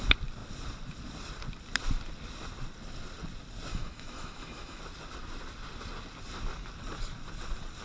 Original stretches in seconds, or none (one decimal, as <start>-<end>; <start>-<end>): 0.0-3.7; 4.8-7.8